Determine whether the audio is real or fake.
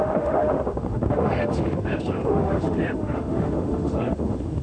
fake